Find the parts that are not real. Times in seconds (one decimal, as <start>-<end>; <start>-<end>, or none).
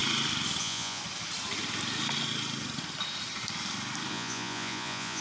0.6-1.0; 4.1-5.2